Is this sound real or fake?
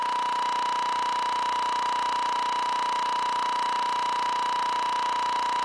real